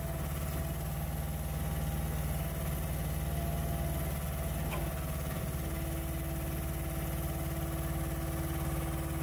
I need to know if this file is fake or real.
real